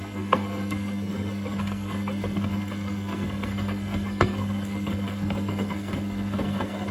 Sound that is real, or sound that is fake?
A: fake